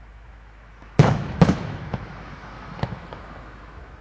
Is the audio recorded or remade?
remade